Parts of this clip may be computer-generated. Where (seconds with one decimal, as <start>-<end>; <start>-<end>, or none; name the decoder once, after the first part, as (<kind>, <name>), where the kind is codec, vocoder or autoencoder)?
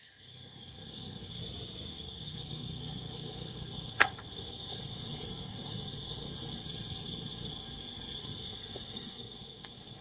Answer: 0.0-1.4 (codec, SNAC); 1.9-10.0